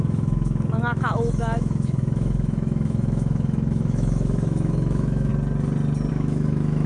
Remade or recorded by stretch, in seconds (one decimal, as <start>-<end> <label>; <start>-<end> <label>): 0.0-5.3 remade; 5.3-6.1 recorded; 6.1-6.9 remade